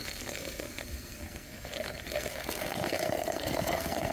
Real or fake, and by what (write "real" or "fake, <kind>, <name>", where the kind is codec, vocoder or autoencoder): fake, codec, SNAC